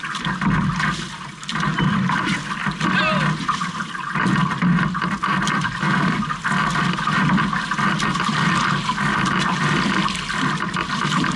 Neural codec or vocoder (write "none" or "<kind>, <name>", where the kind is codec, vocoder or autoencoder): none